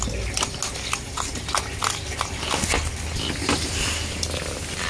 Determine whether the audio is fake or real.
real